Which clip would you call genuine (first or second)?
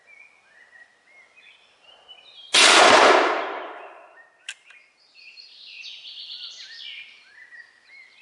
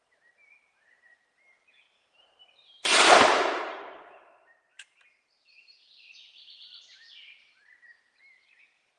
first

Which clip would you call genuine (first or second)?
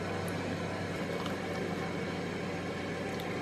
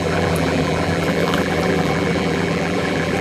first